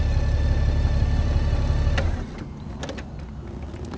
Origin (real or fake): real